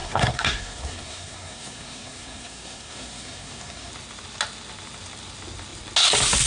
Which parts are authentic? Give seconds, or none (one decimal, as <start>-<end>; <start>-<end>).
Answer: 3.9-6.5